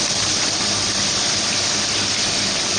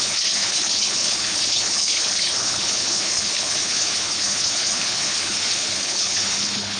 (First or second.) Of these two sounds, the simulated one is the second